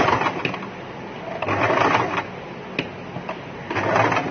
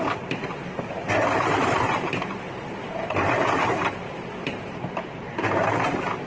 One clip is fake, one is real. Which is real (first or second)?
first